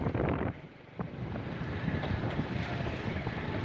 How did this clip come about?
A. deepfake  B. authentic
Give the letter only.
B